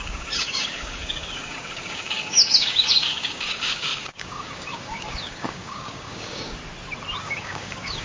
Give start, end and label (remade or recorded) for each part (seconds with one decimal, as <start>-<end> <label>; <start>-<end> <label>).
0.0-6.6 remade; 6.6-7.2 recorded; 7.2-8.0 remade